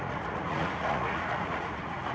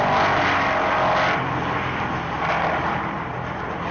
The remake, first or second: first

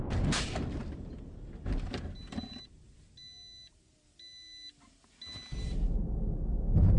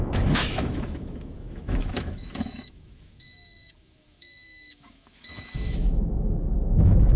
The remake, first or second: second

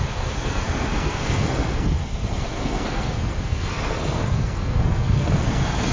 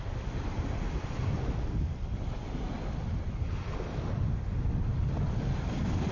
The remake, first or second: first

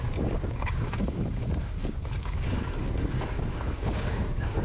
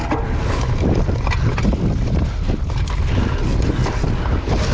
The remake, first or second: first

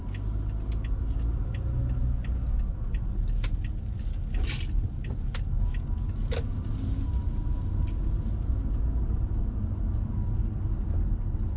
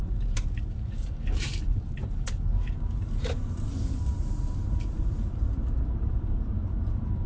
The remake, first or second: second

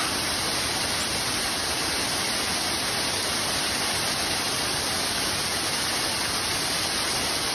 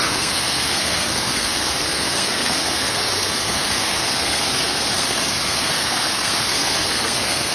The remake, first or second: second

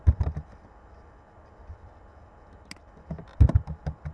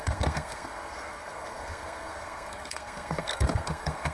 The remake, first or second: second